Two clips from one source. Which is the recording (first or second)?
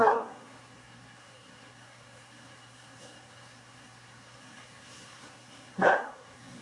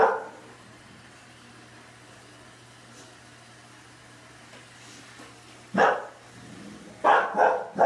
second